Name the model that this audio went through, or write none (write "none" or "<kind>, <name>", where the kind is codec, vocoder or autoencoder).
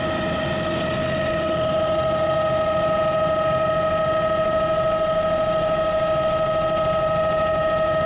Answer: none